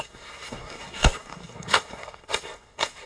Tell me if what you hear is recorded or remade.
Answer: remade